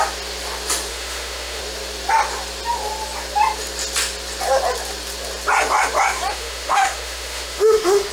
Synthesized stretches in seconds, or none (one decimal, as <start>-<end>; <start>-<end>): 0.9-1.6; 6.3-8.1